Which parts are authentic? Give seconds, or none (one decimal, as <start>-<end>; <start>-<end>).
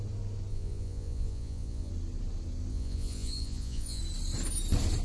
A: 0.0-0.5; 1.9-2.7; 4.0-5.0